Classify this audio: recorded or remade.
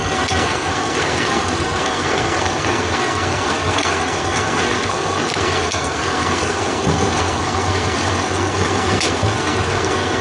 remade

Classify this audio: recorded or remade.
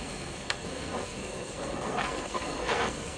remade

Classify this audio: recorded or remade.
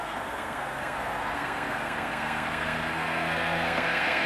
remade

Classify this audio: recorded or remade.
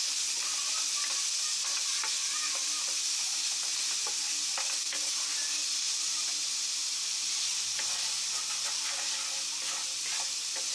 recorded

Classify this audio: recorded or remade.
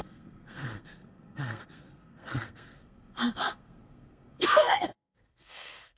remade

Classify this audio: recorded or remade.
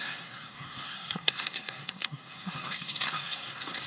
remade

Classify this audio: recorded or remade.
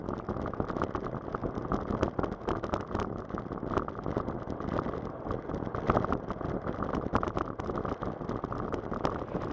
recorded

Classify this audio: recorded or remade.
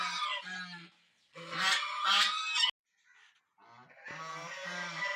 recorded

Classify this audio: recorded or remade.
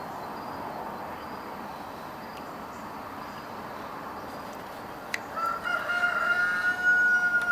recorded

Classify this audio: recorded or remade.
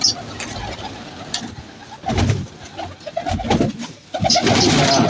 recorded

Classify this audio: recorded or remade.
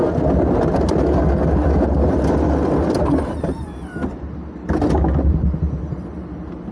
recorded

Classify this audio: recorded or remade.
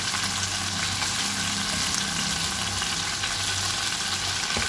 recorded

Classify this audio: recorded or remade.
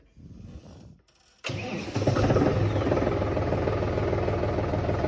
recorded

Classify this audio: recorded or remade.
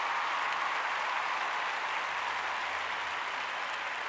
recorded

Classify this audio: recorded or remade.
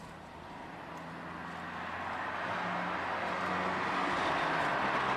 recorded